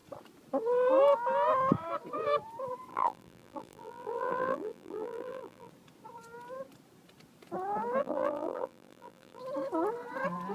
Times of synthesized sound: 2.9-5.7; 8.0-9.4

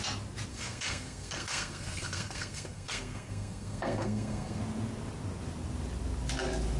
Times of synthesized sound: 0.5-4.6

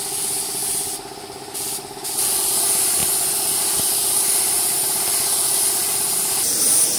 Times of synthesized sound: 0.6-2.3

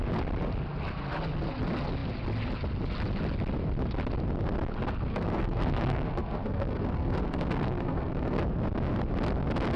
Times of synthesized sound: 5.1-8.4

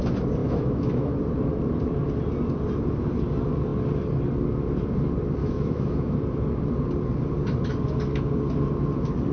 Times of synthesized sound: 0.4-1.1; 5.4-6.2

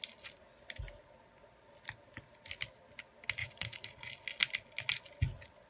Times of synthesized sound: 3.4-4.1